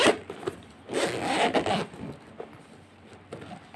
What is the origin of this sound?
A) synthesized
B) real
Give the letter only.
B